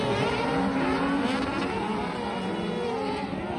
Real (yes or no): yes